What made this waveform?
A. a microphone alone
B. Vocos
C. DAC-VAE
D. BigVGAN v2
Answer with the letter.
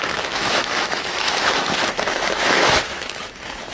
C